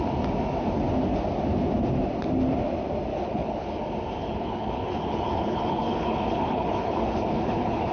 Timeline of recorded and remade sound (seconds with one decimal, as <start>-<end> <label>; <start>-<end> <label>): 0.0-3.1 recorded; 3.1-3.8 remade; 3.8-4.2 recorded; 4.2-7.9 remade